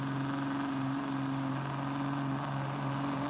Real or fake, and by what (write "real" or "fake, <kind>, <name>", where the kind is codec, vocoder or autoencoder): real